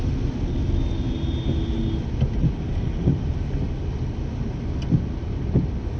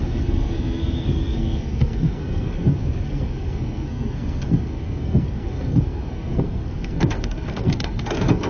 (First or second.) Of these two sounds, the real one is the first